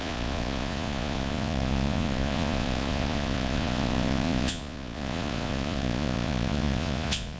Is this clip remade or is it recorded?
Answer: remade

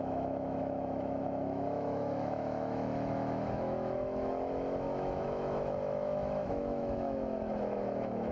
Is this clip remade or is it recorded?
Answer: remade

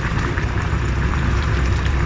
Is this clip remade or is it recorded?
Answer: remade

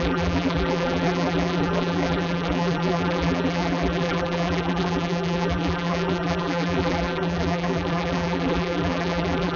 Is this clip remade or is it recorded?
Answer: remade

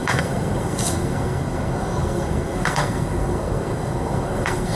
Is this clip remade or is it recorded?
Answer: remade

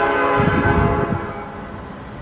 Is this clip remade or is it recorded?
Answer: recorded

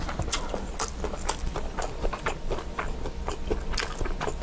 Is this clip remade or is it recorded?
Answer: recorded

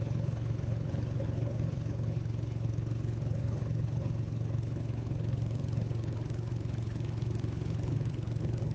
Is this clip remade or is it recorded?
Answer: remade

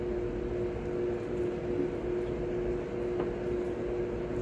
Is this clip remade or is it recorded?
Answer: recorded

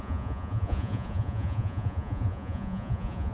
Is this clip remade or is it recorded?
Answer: remade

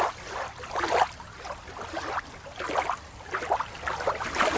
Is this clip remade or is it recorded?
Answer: recorded